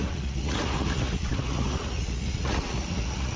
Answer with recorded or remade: remade